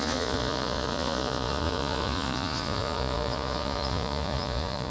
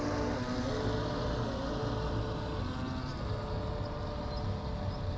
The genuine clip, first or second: second